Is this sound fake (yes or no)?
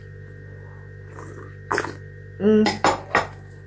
no